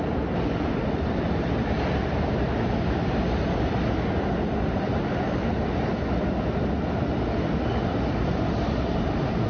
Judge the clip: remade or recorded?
recorded